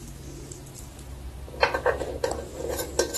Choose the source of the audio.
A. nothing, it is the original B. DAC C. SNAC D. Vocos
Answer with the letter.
A